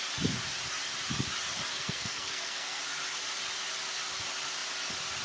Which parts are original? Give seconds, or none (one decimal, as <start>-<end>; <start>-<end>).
0.0-1.7; 2.8-5.2